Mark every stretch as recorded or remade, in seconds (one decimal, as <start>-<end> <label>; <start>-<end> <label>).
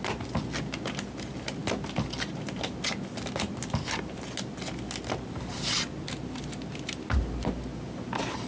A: 0.0-8.5 recorded